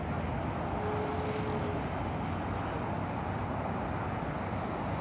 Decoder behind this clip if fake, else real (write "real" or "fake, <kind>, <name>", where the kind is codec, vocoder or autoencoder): real